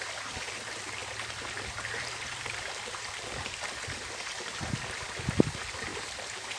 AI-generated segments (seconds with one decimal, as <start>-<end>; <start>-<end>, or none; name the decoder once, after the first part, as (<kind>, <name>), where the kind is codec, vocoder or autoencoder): none

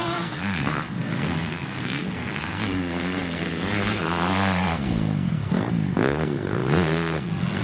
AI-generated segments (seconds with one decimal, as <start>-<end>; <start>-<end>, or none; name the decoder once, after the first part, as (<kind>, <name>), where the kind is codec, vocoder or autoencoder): 0.0-7.6 (codec, SNAC)

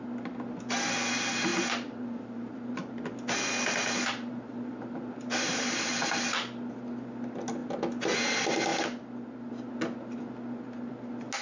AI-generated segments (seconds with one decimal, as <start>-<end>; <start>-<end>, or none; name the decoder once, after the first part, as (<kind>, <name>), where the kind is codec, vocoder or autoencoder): 1.5-3.1 (vocoder, BigVGAN v2); 3.8-5.9

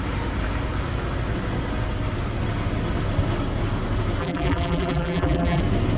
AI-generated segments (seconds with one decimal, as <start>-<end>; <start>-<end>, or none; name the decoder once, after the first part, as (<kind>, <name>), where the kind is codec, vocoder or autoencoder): 4.2-5.6 (vocoder, BigVGAN v2)